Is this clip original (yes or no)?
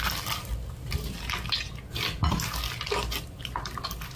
yes